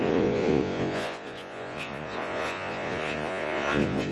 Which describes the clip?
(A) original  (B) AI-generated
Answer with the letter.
B